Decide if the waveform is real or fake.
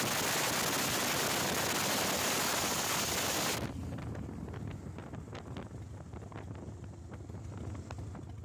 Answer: real